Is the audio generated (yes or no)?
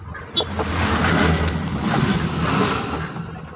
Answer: no